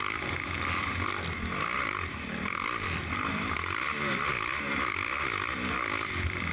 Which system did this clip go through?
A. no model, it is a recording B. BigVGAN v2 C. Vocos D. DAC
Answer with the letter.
A